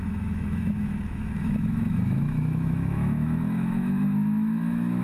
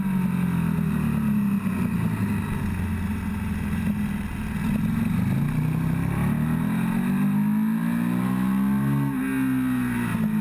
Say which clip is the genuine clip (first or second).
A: second